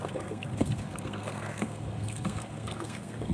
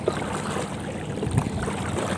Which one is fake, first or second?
first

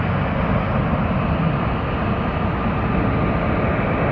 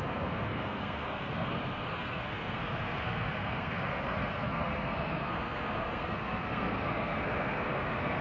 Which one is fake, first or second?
second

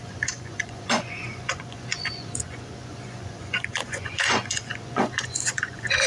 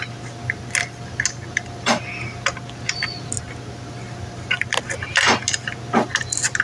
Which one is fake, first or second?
first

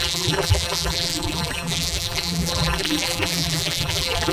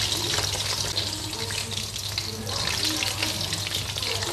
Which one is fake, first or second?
first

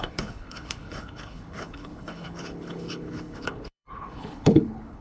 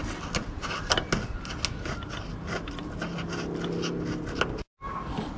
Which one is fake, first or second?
first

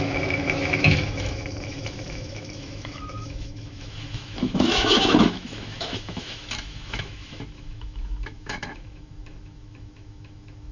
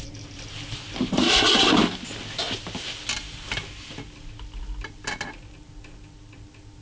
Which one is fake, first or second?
first